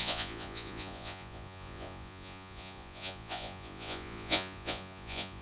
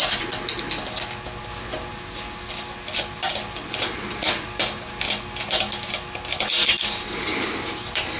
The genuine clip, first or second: second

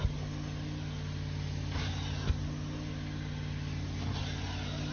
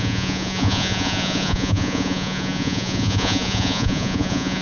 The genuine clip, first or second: first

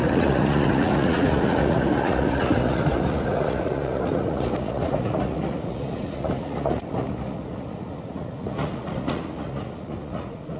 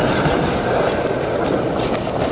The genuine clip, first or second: second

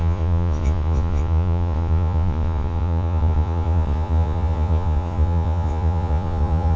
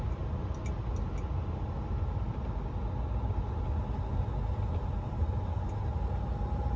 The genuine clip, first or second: second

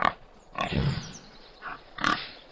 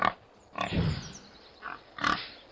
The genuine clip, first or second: second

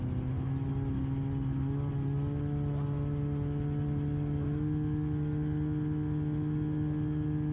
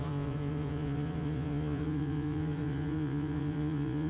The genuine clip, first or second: first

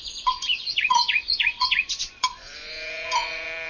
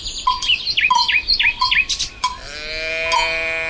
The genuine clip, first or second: second